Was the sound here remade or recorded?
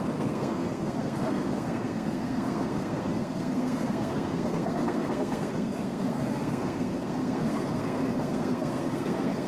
remade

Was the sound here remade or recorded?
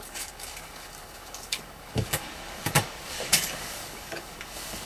remade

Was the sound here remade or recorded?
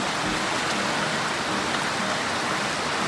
recorded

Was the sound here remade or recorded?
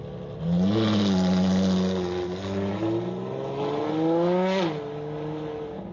recorded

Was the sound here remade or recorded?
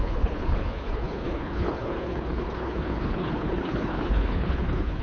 remade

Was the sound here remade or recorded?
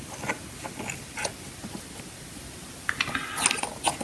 recorded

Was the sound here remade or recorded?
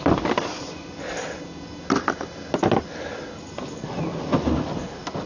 recorded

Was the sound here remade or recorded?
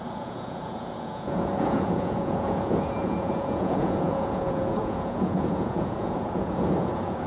remade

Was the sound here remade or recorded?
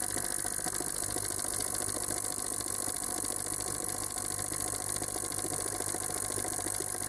recorded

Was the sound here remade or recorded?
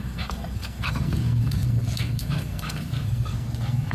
remade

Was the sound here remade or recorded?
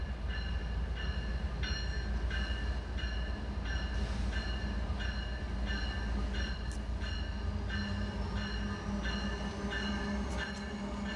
recorded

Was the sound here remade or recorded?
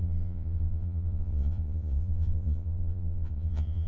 remade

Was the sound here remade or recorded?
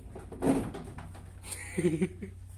recorded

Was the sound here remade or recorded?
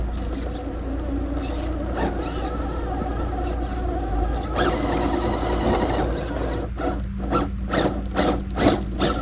recorded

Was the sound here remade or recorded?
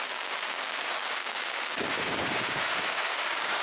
remade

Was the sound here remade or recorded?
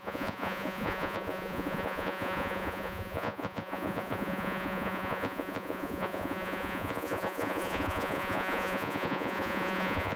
remade